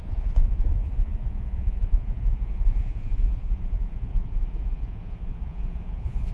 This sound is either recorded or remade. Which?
remade